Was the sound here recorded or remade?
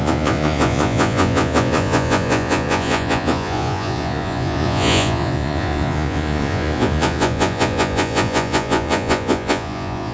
remade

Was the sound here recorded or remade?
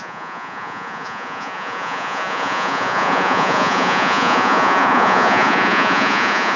remade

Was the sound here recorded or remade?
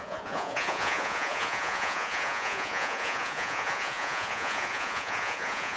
remade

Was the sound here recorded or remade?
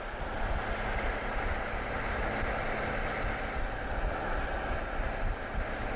recorded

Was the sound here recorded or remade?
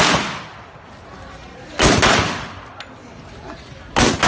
recorded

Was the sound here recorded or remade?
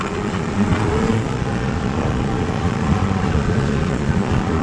remade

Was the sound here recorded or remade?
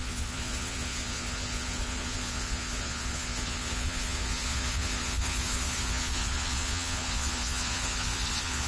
remade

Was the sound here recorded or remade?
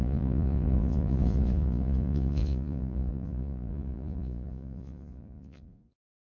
remade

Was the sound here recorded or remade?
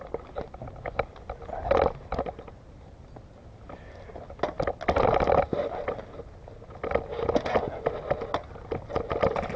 recorded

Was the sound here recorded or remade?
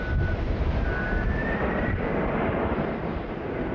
recorded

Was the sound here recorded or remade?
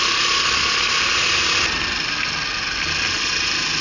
recorded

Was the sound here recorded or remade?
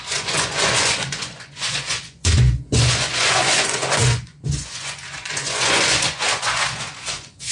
remade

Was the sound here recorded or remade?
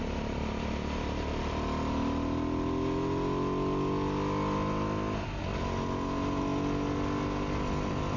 recorded